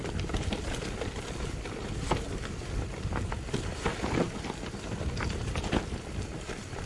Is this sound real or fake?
real